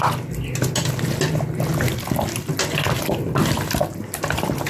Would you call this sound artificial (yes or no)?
no